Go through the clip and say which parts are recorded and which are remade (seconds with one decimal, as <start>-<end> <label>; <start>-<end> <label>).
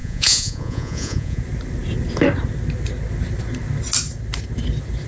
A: 0.0-1.4 remade; 1.4-5.1 recorded